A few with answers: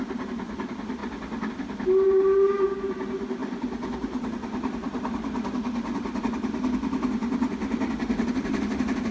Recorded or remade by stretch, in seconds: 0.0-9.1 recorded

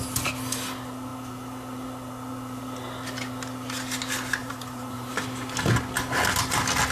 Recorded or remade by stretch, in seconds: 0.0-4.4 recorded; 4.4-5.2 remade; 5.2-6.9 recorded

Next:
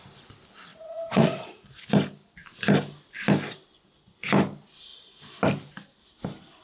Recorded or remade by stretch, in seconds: 0.0-0.7 recorded; 0.7-1.7 remade; 1.7-6.6 recorded

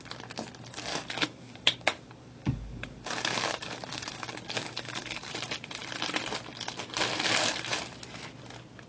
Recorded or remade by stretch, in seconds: 0.0-0.9 recorded; 0.9-5.3 remade; 5.3-8.9 recorded

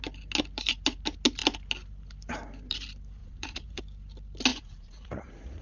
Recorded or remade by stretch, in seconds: 0.0-3.2 recorded; 3.2-3.8 remade; 3.8-4.5 recorded; 4.5-5.6 remade

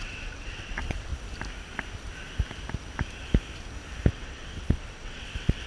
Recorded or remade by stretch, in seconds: 0.0-1.1 remade; 1.1-4.1 recorded; 4.1-5.7 remade